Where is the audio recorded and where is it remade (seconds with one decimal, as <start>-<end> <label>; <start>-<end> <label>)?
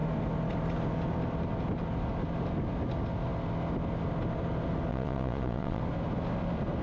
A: 0.0-4.9 recorded; 4.9-5.8 remade; 5.8-6.8 recorded